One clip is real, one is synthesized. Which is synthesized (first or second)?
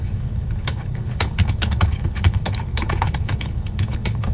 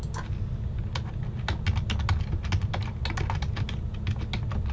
first